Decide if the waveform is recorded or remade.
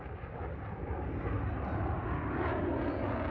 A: recorded